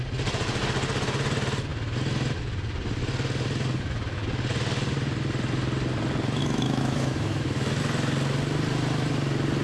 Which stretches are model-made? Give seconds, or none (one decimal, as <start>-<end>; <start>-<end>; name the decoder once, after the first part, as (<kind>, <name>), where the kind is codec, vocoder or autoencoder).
6.4-7.8 (autoencoder, DAC-VAE)